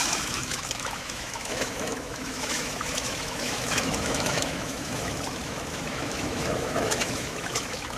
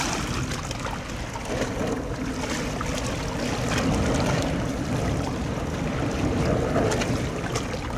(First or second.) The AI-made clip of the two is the first